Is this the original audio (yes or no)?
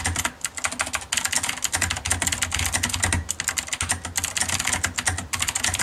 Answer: yes